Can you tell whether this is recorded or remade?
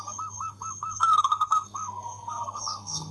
remade